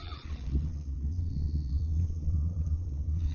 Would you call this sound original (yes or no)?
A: no